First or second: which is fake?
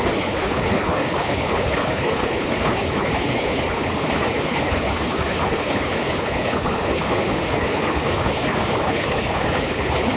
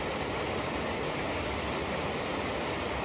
first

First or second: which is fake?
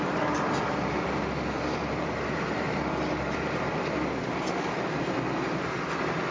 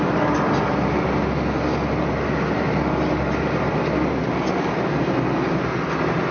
first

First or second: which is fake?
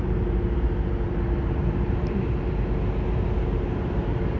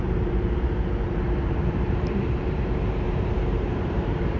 second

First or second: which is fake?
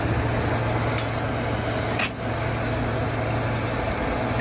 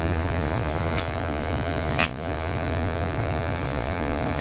second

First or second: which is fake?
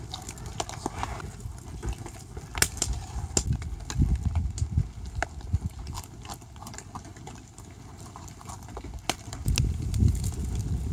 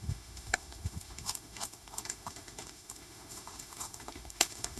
second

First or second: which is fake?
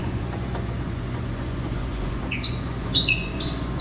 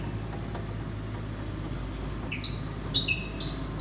first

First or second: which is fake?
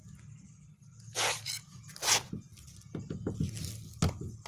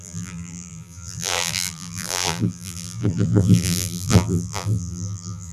second